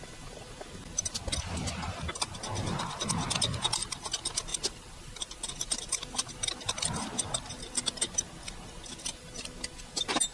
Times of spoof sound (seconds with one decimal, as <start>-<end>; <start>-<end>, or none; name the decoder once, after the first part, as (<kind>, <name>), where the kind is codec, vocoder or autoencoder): 4.5-7.6 (vocoder, BigVGAN v2)